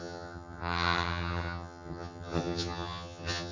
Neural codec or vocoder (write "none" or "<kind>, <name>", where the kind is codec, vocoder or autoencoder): vocoder, HiFi-GAN